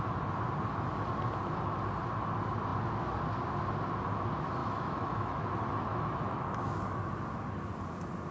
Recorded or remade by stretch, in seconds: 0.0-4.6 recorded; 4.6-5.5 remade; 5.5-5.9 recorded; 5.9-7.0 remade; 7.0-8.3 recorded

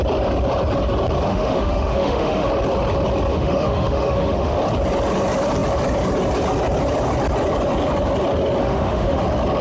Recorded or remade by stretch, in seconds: 0.0-1.3 recorded; 1.3-2.5 remade; 2.5-3.3 recorded; 3.3-4.6 remade; 4.6-8.6 recorded; 8.6-9.2 remade; 9.2-9.6 recorded

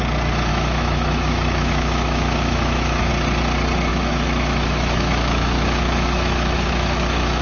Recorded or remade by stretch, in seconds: 0.0-0.5 recorded; 0.5-3.1 remade; 3.1-3.9 recorded; 3.9-7.4 remade

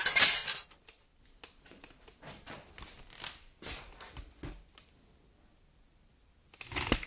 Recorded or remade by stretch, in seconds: 0.0-7.1 recorded

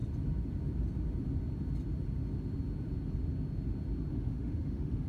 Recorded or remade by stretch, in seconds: 0.0-4.1 recorded; 4.1-5.1 remade

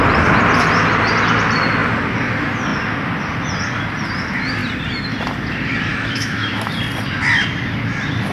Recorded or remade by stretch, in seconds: 0.0-5.9 recorded; 5.9-6.7 remade; 6.7-8.3 recorded